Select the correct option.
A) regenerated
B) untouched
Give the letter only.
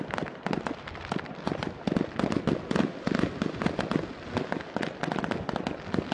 B